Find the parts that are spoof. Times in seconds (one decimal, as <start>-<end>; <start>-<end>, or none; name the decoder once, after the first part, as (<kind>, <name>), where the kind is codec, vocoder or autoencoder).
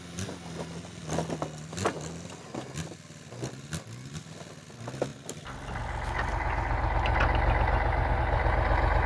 none